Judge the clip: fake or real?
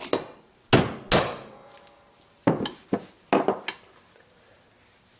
real